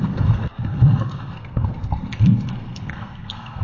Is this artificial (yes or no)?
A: yes